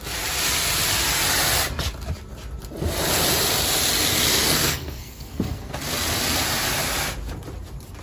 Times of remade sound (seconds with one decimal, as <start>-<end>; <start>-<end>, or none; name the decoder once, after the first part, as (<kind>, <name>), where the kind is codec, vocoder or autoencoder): 4.3-5.7 (codec, SNAC)